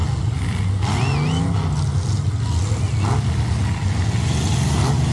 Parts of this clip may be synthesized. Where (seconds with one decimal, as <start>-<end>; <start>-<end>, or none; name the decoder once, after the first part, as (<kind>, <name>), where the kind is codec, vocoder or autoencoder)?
none